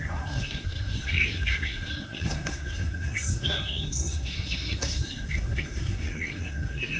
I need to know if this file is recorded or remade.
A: remade